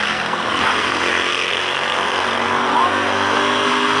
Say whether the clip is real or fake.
fake